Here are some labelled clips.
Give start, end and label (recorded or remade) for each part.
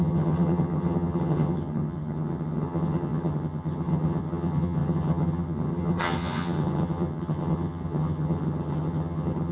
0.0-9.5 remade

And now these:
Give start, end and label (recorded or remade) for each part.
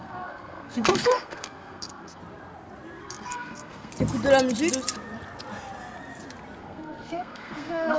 0.0-2.2 remade; 2.2-3.0 recorded; 3.0-3.9 remade; 3.9-6.6 recorded; 6.6-8.0 remade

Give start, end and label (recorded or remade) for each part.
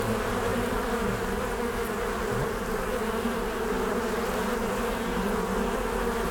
0.0-0.5 recorded; 0.5-1.1 remade; 1.1-6.3 recorded